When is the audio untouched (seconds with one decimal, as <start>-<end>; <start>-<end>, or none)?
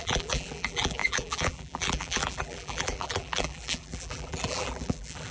none